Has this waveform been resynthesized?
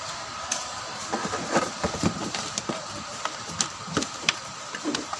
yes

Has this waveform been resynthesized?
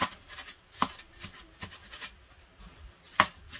no